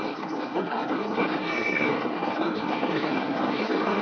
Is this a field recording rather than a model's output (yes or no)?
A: no